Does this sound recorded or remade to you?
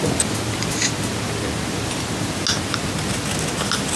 recorded